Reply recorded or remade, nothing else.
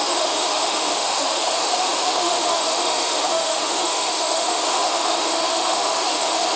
remade